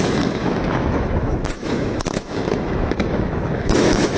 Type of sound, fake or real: fake